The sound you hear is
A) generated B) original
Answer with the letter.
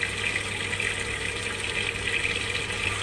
B